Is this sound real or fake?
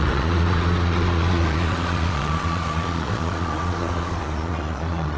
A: fake